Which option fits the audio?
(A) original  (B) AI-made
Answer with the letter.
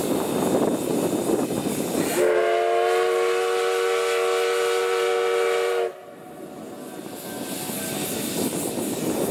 A